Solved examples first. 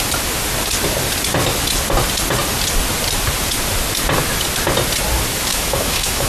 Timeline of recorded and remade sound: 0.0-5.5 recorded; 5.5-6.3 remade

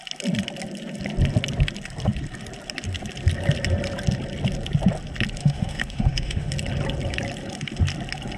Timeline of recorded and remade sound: 0.0-5.4 recorded; 5.4-6.5 remade; 6.5-8.4 recorded

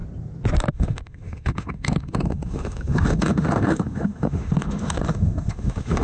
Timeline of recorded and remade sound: 0.0-0.7 recorded; 0.7-6.0 remade

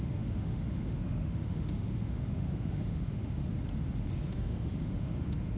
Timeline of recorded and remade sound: 0.0-3.4 remade; 3.4-4.3 recorded; 4.3-5.6 remade

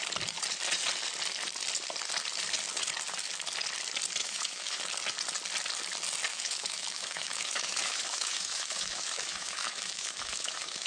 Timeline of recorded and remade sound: 0.0-4.2 recorded; 4.2-4.8 remade; 4.8-6.3 recorded; 6.3-10.9 remade

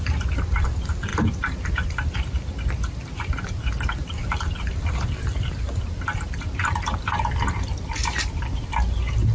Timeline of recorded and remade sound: 0.0-9.3 recorded